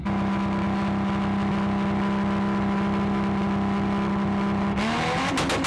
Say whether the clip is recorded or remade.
recorded